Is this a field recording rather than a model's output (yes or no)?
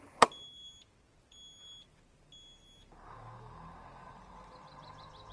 yes